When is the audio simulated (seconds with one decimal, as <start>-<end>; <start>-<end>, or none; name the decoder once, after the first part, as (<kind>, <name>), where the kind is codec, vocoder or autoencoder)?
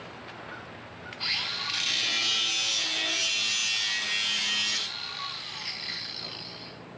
none